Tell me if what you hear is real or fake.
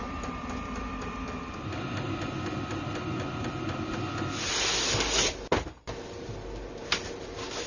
real